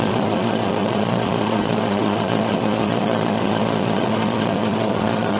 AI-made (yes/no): yes